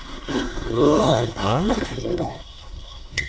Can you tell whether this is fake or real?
fake